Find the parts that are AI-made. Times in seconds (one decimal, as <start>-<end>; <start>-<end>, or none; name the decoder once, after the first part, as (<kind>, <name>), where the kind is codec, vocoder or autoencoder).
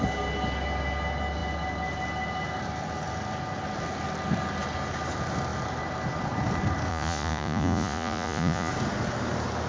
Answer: 6.9-8.7 (vocoder, Vocos)